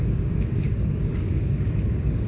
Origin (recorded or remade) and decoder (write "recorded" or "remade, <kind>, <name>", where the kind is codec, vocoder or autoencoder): remade, codec, DAC